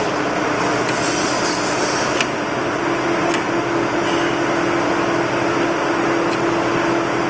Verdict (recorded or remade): recorded